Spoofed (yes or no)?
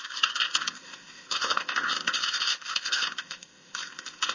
yes